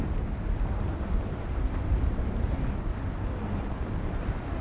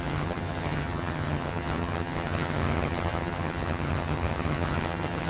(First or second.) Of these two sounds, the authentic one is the first